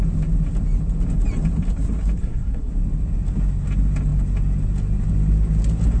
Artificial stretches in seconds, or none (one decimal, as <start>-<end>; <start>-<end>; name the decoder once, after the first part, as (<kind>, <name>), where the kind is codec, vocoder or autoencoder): 2.2-2.7 (codec, SNAC)